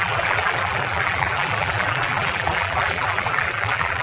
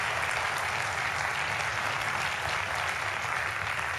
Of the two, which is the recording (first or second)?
second